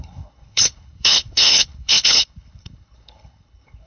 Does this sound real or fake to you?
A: fake